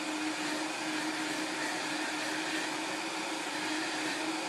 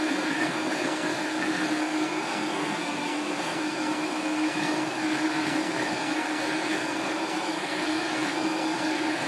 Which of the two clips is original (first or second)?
first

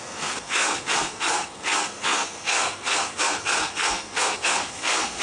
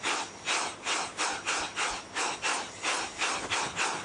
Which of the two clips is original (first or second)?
second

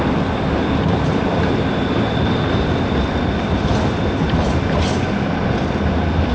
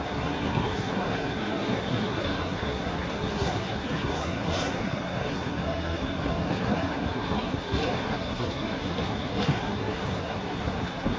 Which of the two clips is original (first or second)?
first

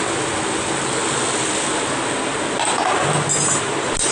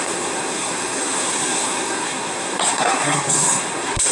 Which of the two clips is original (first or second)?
first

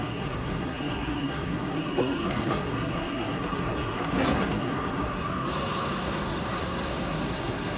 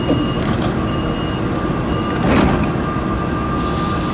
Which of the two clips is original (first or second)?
second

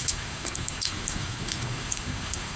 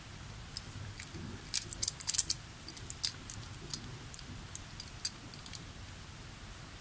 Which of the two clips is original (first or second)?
second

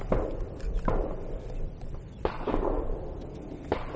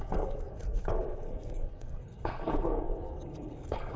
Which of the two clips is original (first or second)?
first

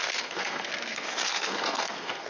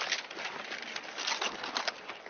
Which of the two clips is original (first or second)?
second